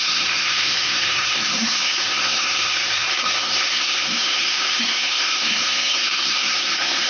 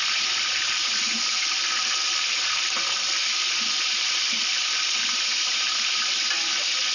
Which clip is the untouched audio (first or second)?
second